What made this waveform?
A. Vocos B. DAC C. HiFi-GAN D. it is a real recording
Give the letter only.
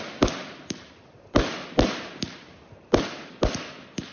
D